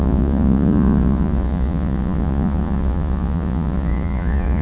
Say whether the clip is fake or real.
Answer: fake